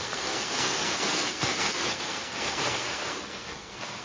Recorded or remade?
remade